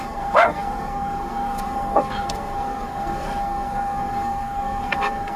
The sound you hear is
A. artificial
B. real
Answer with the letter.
A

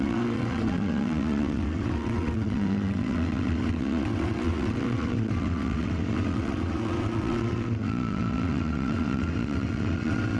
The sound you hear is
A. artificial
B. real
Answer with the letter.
A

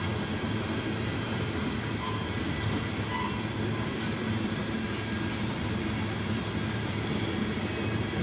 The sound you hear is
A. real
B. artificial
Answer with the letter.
A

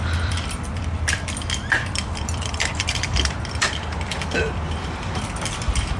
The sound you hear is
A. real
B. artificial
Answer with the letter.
B